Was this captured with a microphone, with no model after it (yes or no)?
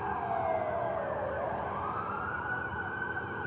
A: yes